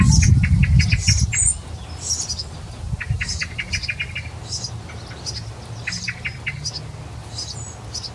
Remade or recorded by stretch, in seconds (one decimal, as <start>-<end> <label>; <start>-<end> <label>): 0.0-8.1 recorded